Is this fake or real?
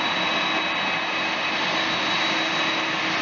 real